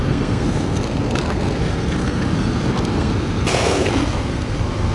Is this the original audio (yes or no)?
no